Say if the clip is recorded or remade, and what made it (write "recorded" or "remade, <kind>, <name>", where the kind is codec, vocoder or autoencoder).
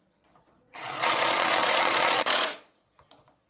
remade, vocoder, Vocos